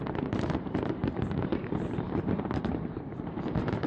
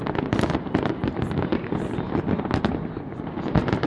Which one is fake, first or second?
first